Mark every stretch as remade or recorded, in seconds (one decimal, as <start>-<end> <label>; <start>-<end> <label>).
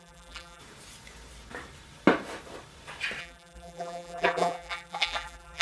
0.0-0.6 remade; 0.6-3.2 recorded; 3.2-5.6 remade